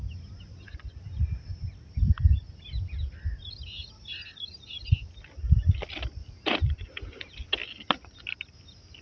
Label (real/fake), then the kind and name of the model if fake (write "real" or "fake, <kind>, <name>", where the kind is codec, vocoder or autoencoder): real